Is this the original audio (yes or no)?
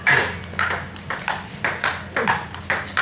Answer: yes